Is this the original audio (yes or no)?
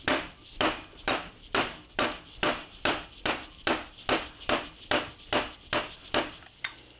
no